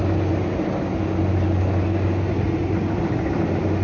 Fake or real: real